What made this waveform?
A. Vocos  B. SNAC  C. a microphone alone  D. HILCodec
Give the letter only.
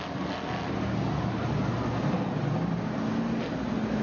C